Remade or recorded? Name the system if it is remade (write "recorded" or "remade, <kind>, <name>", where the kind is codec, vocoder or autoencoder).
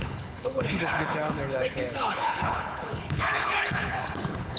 remade, codec, HILCodec